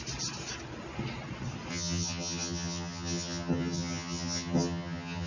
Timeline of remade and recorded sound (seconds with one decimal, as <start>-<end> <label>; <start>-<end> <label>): 0.0-1.7 recorded; 1.7-5.3 remade